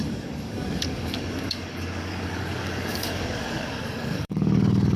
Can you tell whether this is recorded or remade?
remade